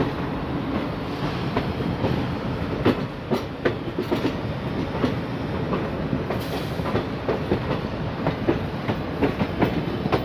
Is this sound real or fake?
real